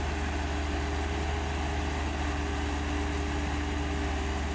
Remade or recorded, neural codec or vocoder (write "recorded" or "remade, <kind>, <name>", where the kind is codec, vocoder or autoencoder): recorded